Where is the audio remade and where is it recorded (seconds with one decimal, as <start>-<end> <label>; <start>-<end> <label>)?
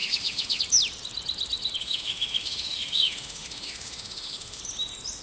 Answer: 0.0-0.6 remade; 0.6-1.8 recorded; 1.8-4.6 remade; 4.6-5.2 recorded